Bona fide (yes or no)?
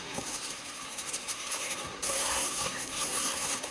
no